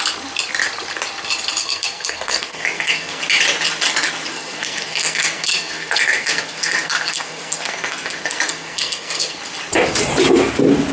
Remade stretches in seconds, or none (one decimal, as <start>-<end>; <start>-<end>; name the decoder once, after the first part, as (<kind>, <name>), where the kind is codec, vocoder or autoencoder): 1.6-3.2 (codec, SNAC); 4.3-9.4